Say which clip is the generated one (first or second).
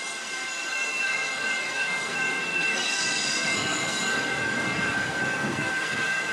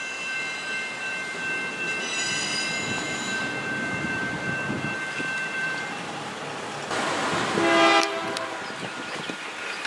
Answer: first